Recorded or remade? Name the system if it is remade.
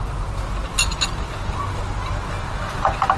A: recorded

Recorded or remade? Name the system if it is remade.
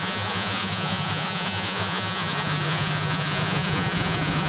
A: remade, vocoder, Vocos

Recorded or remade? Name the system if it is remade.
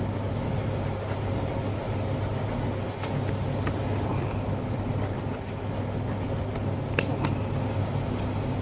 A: recorded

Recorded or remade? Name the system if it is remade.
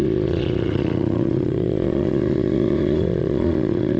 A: remade, vocoder, Vocos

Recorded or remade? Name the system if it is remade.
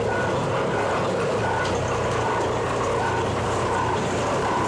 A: recorded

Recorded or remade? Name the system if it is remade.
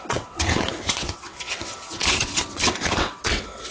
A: remade, vocoder, WaveNeXt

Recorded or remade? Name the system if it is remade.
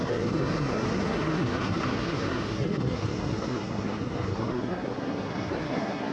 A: remade, codec, SNAC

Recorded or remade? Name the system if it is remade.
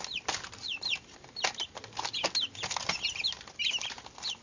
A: recorded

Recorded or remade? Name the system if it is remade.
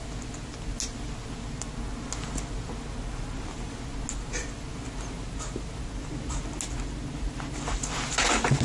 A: recorded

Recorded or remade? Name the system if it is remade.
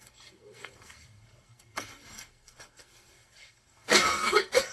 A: remade, codec, SNAC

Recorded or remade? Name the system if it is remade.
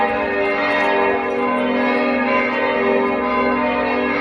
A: recorded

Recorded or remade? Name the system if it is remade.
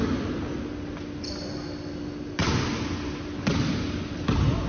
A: recorded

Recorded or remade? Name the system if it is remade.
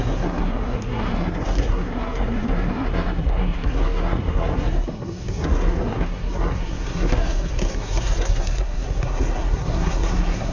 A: remade, codec, SNAC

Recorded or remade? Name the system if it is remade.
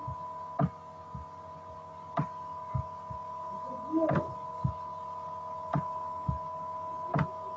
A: recorded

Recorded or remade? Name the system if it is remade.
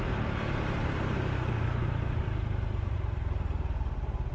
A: remade, vocoder, BigVGAN v2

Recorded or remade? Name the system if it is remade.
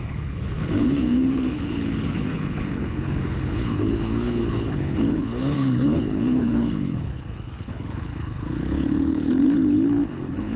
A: remade, codec, HILCodec